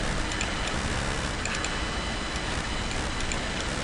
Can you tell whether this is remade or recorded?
recorded